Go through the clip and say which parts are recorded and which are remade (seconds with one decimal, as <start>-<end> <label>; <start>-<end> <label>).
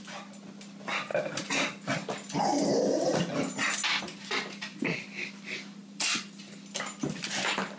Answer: 0.0-7.8 recorded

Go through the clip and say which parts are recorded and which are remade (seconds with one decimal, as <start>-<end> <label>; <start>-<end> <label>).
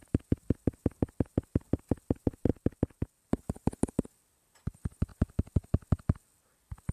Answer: 0.0-6.9 recorded